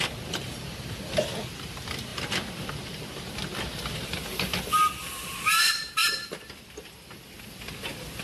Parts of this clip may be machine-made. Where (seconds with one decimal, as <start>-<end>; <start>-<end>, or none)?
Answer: 2.1-2.7; 6.0-6.6